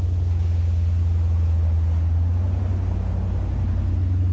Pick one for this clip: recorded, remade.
recorded